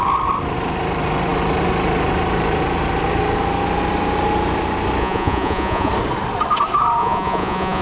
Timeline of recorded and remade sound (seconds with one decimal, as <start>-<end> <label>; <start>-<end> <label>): 0.0-5.0 recorded; 5.0-5.9 remade; 5.9-7.0 recorded; 7.0-7.8 remade